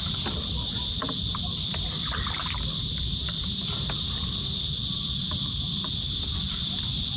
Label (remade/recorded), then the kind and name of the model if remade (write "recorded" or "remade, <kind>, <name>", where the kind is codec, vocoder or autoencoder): remade, vocoder, BigVGAN v2